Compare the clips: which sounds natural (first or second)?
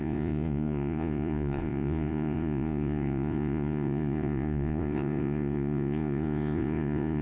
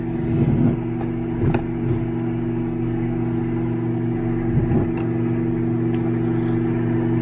second